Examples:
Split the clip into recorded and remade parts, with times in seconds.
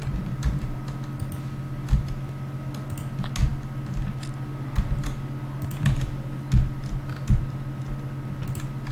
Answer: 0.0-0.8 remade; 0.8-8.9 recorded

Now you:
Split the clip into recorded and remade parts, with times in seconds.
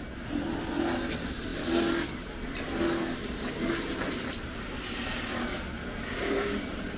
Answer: 0.0-7.0 recorded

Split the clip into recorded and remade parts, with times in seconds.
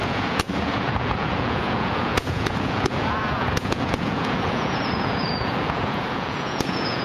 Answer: 0.0-7.0 remade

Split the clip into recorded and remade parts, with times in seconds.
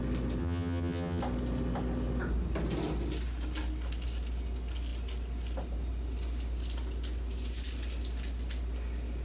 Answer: 0.0-0.4 recorded; 0.4-1.2 remade; 1.2-9.2 recorded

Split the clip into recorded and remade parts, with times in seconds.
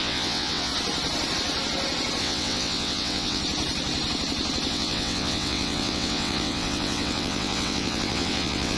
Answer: 0.0-0.7 remade; 0.7-2.2 recorded; 2.2-3.4 remade; 3.4-4.7 recorded; 4.7-8.8 remade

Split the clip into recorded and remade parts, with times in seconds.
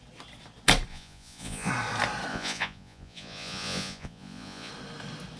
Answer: 0.0-0.9 recorded; 0.9-1.7 remade; 1.7-2.3 recorded; 2.3-4.7 remade; 4.7-5.4 recorded